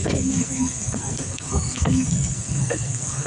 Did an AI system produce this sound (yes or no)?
yes